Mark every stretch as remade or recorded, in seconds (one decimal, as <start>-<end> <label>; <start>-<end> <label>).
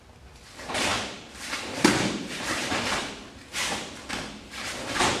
0.0-0.9 recorded; 0.9-2.2 remade; 2.2-2.6 recorded; 2.6-3.1 remade; 3.1-5.2 recorded